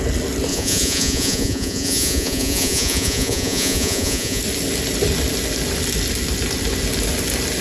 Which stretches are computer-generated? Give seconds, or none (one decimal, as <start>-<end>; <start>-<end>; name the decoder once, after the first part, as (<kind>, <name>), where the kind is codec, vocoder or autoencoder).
0.5-4.4 (vocoder, Vocos)